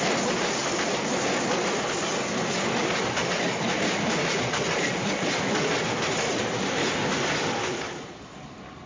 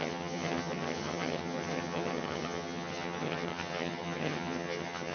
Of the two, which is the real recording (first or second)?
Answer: first